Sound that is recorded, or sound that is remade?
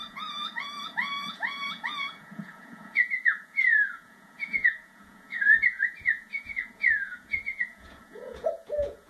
remade